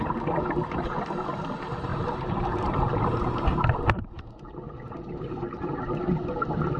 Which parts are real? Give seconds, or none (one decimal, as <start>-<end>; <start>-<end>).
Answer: 0.0-1.9; 6.0-6.8

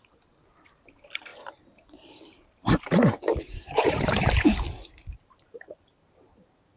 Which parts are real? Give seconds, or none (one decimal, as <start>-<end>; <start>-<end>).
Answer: none

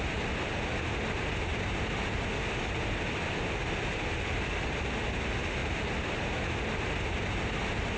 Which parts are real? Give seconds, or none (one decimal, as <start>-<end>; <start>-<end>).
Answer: 0.0-5.6; 6.5-8.0

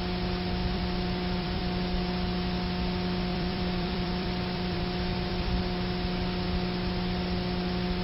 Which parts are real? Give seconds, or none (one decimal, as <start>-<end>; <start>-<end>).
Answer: 0.0-0.6; 1.6-3.3; 5.6-8.0

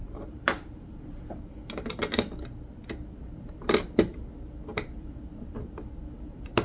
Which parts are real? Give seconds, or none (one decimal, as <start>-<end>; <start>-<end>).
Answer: 1.4-4.7; 5.2-6.6

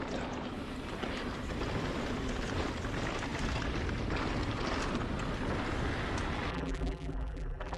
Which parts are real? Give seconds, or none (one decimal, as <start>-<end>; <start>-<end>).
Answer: 0.0-6.5